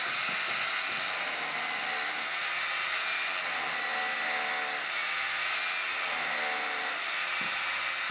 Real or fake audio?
real